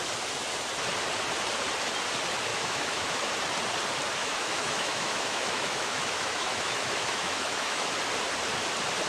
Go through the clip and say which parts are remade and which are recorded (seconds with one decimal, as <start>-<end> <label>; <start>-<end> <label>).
0.0-2.5 recorded; 2.5-3.3 remade; 3.3-4.2 recorded; 4.2-7.9 remade; 7.9-9.1 recorded